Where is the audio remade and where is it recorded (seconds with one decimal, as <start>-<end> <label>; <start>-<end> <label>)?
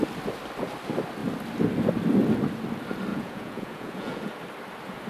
0.0-3.1 recorded; 3.1-4.3 remade; 4.3-5.1 recorded